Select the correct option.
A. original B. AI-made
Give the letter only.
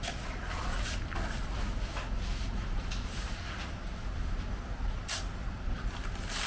B